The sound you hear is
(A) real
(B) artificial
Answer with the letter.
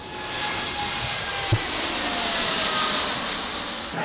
A